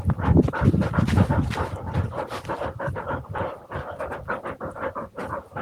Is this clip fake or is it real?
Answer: real